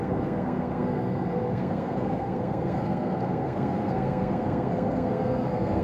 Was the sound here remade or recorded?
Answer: remade